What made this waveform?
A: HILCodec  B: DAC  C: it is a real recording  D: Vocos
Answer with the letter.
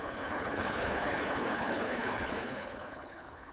A